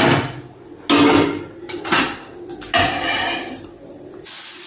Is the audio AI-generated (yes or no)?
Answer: no